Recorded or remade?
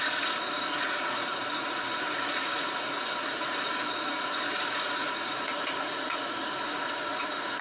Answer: remade